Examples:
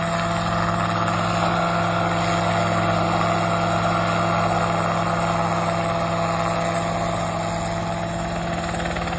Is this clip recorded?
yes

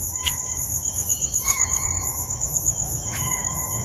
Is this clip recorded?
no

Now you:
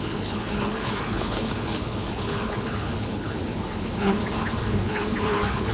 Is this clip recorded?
no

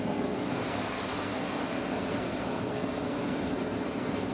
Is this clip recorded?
no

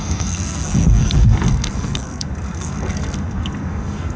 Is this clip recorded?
no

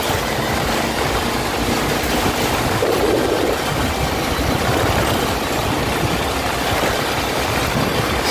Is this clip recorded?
yes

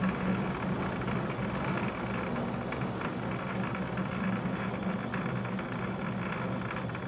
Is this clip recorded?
yes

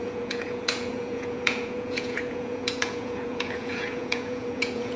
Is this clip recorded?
no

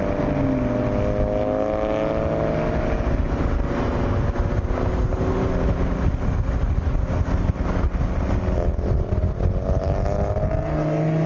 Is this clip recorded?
yes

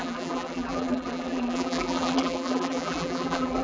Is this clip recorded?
no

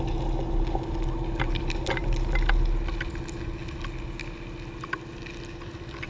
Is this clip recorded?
yes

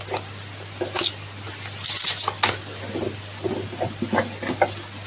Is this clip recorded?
yes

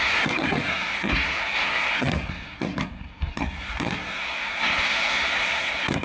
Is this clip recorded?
no